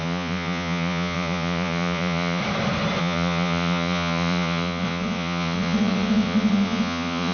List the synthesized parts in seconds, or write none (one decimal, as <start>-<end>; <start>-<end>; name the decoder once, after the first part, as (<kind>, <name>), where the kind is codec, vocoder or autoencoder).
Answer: 0.0-2.4 (vocoder, Vocos); 3.0-7.3